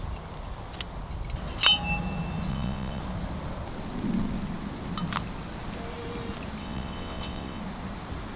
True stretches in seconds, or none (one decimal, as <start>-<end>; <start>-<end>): 0.0-2.5; 3.0-6.6; 7.6-8.4

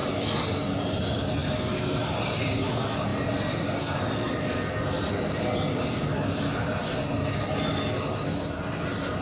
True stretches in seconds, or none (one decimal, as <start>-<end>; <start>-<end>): 0.0-9.2

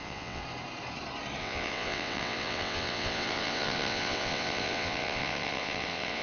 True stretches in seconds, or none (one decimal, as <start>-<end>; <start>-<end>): 0.4-1.4

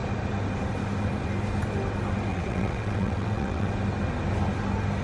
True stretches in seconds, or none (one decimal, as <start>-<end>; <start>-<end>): 0.0-2.3; 3.7-5.0